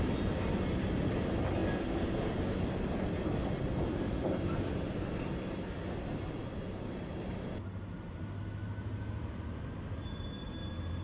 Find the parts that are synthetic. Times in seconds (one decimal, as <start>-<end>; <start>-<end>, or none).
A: none